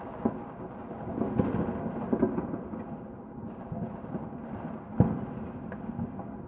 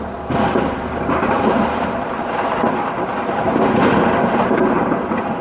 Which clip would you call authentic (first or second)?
first